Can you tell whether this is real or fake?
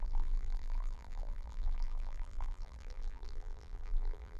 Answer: fake